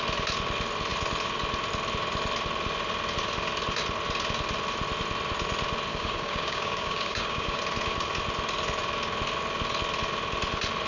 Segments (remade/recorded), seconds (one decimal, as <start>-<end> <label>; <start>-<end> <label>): 0.0-5.9 recorded; 5.9-7.6 remade; 7.6-10.9 recorded

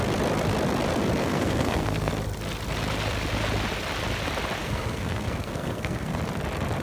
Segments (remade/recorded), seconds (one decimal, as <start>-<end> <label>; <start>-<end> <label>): 0.0-1.2 recorded; 1.2-2.1 remade; 2.1-4.6 recorded; 4.6-6.2 remade; 6.2-6.8 recorded

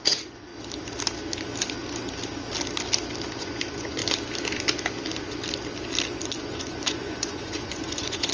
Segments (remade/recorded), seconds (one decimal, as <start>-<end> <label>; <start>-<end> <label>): 0.0-0.5 remade; 0.5-3.4 recorded; 3.4-4.0 remade; 4.0-6.4 recorded; 6.4-8.3 remade

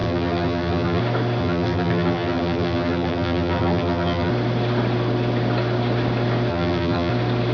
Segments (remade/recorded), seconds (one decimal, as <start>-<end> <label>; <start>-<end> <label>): 0.0-1.0 remade; 1.0-1.4 recorded; 1.4-4.3 remade; 4.3-6.5 recorded; 6.5-7.1 remade; 7.1-7.5 recorded

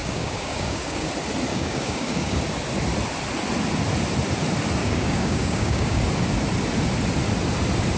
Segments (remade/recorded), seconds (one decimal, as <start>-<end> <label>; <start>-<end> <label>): 0.0-1.1 remade; 1.1-1.5 recorded; 1.5-2.4 remade; 2.4-4.8 recorded; 4.8-6.0 remade; 6.0-8.0 recorded

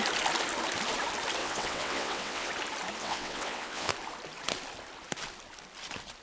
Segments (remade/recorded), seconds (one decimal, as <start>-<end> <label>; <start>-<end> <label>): 0.0-1.4 recorded; 1.4-2.5 remade; 2.5-3.0 recorded; 3.0-3.9 remade; 3.9-6.2 recorded

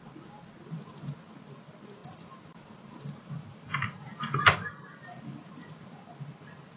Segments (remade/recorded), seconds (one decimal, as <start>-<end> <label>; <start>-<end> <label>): 0.0-2.0 recorded; 2.0-6.1 remade; 6.1-6.8 recorded